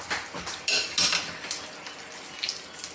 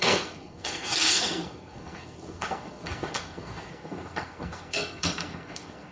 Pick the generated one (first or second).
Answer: second